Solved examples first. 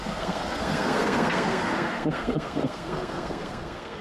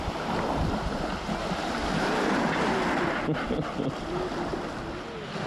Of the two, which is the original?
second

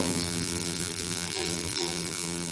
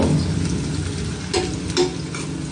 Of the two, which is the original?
second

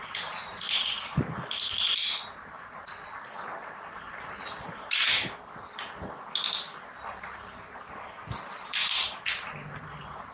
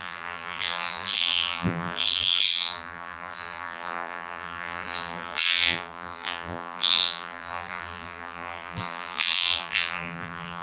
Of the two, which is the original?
first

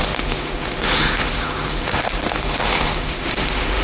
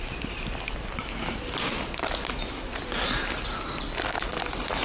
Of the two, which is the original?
second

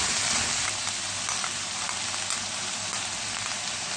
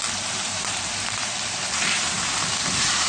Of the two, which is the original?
first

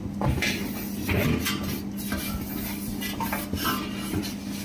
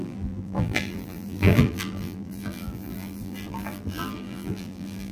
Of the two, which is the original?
first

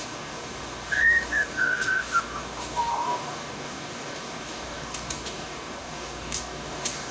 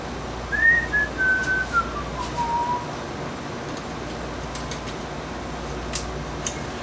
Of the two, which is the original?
second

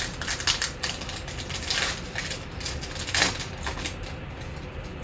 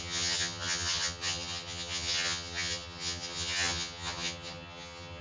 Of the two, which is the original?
first